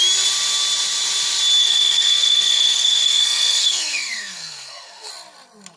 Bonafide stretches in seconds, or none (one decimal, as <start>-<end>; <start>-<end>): 0.0-1.6; 5.1-5.8